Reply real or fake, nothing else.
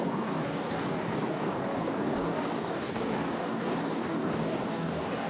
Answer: fake